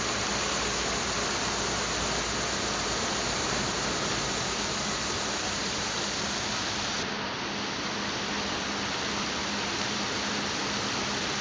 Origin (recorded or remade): recorded